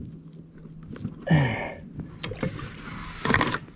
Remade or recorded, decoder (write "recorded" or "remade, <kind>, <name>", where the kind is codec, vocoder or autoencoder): recorded